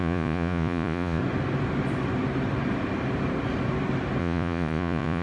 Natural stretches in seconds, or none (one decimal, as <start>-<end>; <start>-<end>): 1.2-4.2